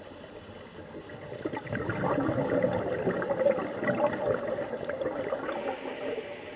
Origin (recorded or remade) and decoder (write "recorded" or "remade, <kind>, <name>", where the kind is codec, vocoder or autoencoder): recorded